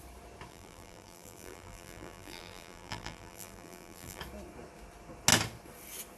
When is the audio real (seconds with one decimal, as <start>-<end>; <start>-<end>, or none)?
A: 0.0-0.5; 4.2-6.2